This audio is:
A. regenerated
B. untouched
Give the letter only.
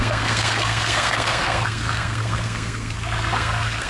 A